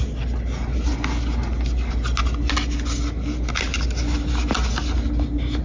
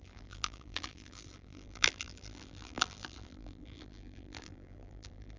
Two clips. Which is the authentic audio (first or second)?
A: first